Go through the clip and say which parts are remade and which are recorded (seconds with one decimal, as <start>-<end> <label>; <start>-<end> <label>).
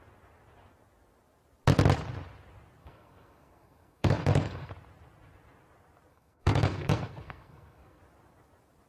0.0-2.8 recorded; 2.8-4.7 remade; 4.7-6.1 recorded; 6.1-8.0 remade; 8.0-8.9 recorded